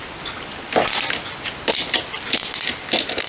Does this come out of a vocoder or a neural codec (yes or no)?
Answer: no